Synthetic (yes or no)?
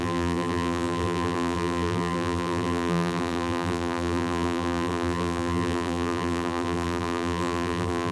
yes